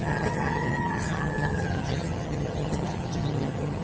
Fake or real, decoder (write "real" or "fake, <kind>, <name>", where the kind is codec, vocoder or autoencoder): fake, vocoder, HiFi-GAN